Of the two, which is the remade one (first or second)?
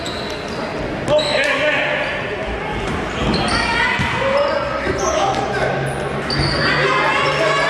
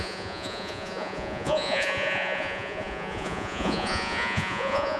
second